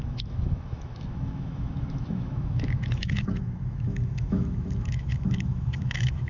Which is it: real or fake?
fake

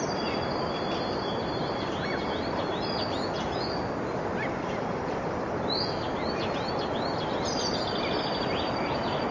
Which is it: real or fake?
real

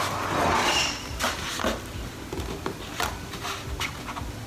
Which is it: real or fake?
real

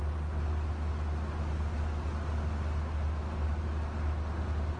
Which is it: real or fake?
real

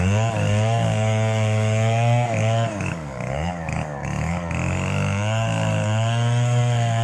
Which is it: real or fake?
fake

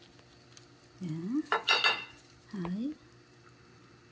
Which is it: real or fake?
real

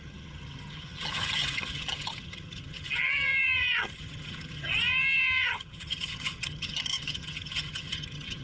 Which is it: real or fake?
fake